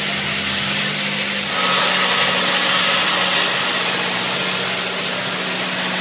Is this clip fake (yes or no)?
no